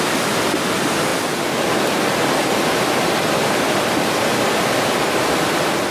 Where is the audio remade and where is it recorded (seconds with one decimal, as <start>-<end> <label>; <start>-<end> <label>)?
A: 0.0-5.9 recorded